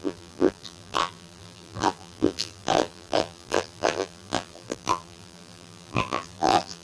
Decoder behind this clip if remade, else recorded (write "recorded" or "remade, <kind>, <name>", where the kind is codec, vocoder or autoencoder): remade, vocoder, BigVGAN v2